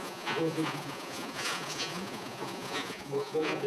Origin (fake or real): fake